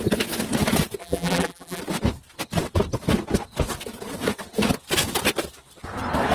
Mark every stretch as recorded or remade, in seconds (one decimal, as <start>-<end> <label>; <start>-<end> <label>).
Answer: 0.0-1.0 recorded; 1.0-1.8 remade; 1.8-6.3 recorded